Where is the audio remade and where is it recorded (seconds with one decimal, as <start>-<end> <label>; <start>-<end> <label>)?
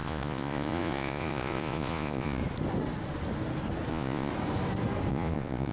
0.0-2.4 remade; 2.4-3.9 recorded; 3.9-4.3 remade; 4.3-5.1 recorded; 5.1-5.7 remade